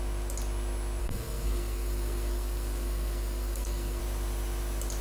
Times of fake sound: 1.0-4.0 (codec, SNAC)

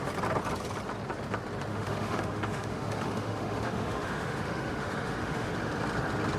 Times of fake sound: 1.7-5.5 (autoencoder, DAC-VAE)

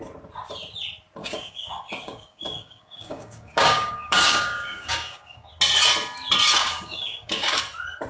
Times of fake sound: 1.2-5.5 (codec, DAC); 6.6-7.6

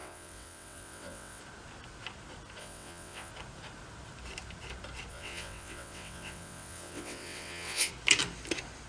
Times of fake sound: 0.0-1.4 (vocoder, WaveNeXt); 2.6-3.3; 5.1-7.9

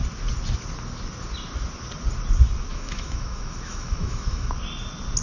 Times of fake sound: 2.7-4.5 (autoencoder, DAC-VAE)

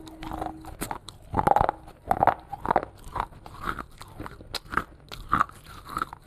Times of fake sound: none